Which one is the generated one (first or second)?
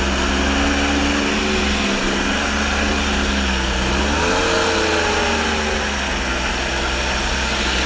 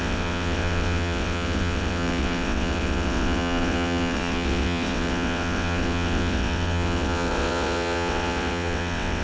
second